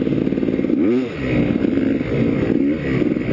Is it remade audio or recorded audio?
recorded